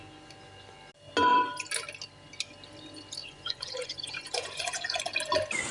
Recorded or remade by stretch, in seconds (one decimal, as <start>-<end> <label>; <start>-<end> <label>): 0.0-3.2 recorded; 3.2-5.0 remade; 5.0-5.7 recorded